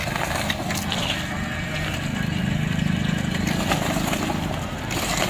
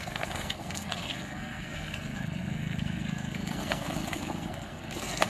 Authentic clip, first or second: first